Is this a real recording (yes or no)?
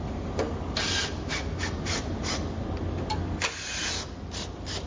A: yes